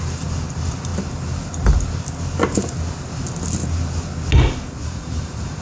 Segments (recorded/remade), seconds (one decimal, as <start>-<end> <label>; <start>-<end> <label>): 0.0-4.8 recorded; 4.8-5.6 remade